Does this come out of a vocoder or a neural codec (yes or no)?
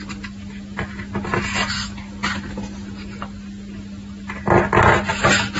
no